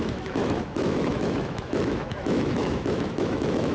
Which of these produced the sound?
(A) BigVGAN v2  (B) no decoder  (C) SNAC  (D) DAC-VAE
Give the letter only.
D